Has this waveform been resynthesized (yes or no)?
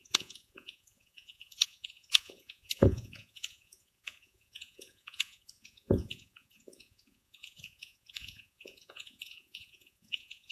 yes